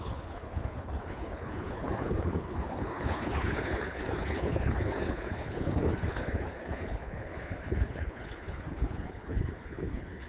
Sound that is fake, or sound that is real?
fake